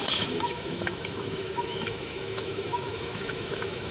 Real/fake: fake